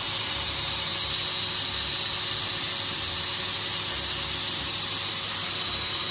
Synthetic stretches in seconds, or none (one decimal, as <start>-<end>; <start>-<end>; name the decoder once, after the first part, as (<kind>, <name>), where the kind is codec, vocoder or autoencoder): 0.0-0.9 (vocoder, BigVGAN v2); 4.6-6.1